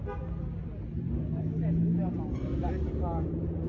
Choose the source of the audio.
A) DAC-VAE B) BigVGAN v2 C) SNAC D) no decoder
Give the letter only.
D